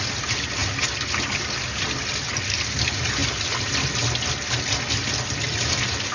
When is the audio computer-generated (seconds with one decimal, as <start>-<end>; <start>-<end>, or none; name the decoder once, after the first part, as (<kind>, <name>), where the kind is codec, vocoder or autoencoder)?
none